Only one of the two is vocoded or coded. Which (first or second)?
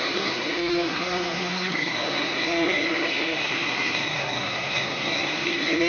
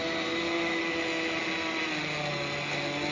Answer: first